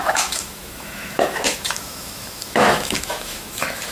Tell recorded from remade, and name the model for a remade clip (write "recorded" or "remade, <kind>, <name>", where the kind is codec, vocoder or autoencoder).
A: remade, autoencoder, DAC-VAE